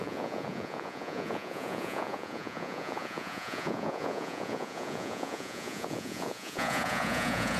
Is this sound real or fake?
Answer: fake